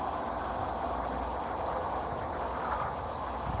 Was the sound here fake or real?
real